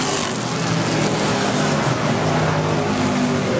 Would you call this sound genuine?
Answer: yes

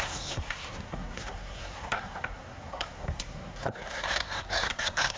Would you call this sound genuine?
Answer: no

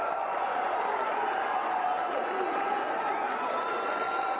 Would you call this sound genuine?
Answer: no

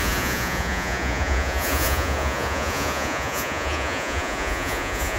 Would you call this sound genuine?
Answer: no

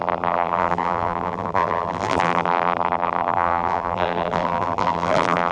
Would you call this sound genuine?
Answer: no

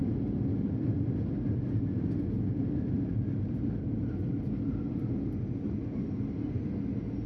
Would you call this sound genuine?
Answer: yes